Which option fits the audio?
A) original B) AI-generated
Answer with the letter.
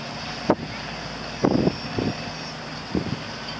A